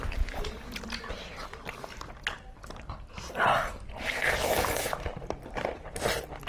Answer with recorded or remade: remade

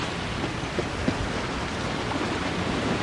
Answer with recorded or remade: recorded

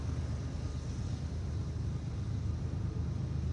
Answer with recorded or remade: recorded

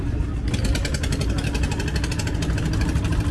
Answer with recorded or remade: recorded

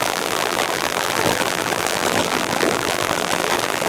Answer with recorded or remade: remade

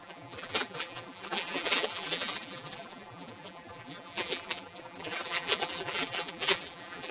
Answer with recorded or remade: remade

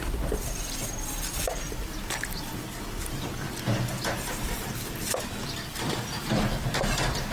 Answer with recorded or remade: remade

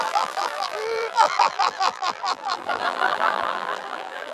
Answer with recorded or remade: remade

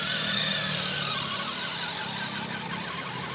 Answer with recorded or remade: recorded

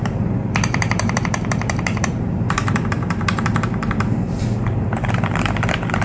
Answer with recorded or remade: remade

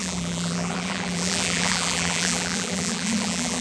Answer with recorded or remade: remade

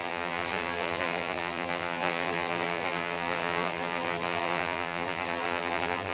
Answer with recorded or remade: remade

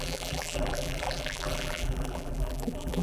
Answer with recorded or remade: remade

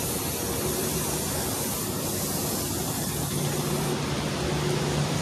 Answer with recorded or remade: recorded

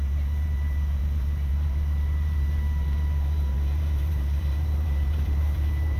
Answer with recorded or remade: remade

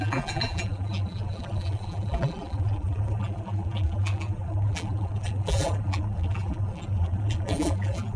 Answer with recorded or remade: remade